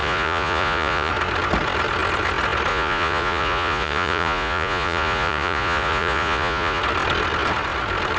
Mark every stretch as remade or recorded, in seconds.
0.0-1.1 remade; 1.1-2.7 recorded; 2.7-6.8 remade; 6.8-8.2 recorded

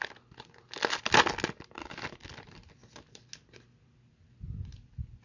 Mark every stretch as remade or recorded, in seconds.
0.0-5.2 recorded